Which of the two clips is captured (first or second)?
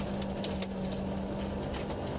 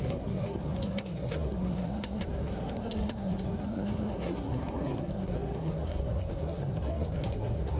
first